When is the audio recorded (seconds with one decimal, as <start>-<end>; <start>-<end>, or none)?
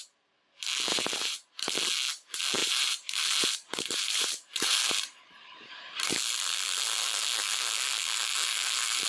0.0-0.9; 1.5-2.6; 5.7-9.1